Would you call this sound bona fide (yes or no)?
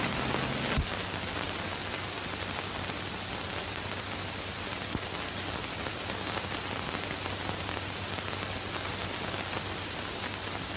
yes